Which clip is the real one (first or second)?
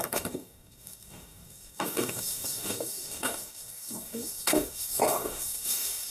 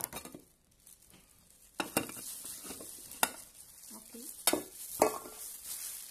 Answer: second